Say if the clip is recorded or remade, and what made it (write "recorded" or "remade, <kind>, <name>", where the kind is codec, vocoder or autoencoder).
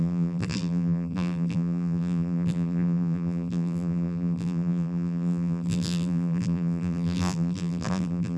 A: remade, vocoder, BigVGAN v2